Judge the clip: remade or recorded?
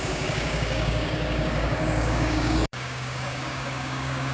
remade